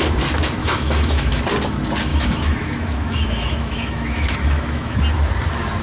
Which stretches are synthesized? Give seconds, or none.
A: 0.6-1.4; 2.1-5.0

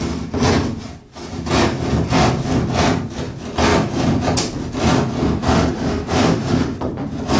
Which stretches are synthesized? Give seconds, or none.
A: 5.4-6.9